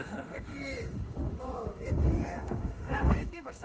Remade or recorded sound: remade